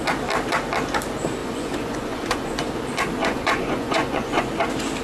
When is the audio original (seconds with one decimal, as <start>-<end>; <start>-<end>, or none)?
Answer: 0.0-1.4; 2.7-3.2; 4.5-5.0